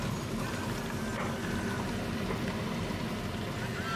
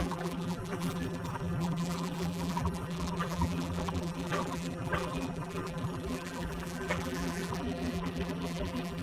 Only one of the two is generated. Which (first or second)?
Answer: second